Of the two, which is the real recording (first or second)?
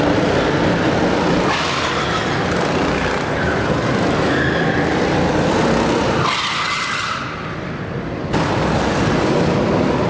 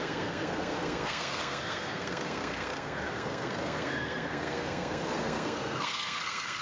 first